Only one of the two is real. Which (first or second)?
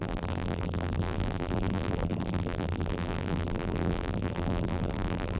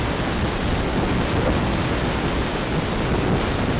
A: second